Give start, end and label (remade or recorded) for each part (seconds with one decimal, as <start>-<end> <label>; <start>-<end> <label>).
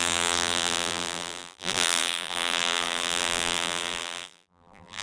0.0-5.0 remade